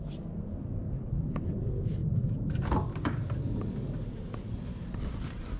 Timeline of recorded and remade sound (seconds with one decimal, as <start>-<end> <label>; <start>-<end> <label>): 0.0-5.6 recorded